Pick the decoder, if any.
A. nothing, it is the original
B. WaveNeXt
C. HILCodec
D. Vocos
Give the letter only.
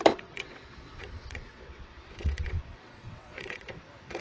B